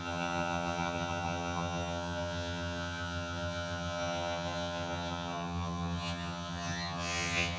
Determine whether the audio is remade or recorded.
remade